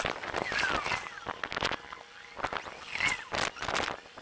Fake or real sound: real